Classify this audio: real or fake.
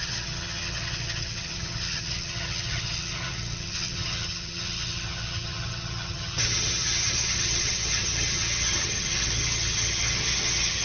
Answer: fake